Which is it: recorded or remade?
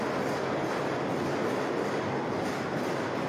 recorded